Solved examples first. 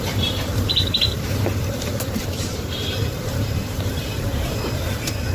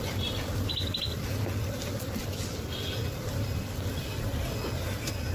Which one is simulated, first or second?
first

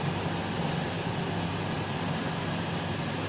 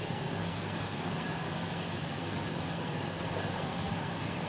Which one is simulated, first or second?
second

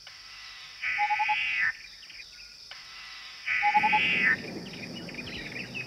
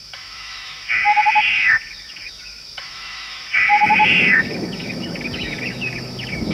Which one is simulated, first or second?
second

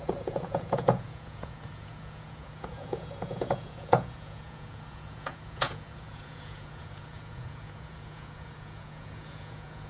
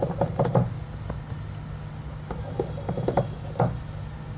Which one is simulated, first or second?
first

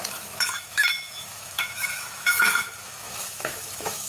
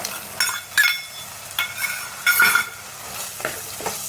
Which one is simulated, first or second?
first